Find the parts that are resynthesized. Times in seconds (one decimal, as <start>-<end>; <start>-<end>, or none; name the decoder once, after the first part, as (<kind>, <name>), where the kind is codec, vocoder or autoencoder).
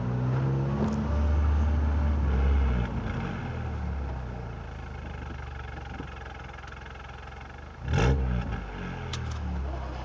9.1-9.6 (autoencoder, DAC-VAE)